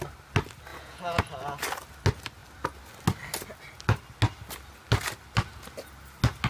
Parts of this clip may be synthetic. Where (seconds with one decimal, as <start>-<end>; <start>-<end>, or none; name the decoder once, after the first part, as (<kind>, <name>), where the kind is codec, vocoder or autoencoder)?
0.7-1.2 (vocoder, Vocos)